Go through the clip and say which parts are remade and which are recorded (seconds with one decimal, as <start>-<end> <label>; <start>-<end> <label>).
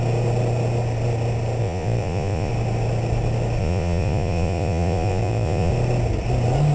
0.0-1.6 recorded; 1.6-2.5 remade; 2.5-3.6 recorded; 3.6-5.7 remade; 5.7-6.7 recorded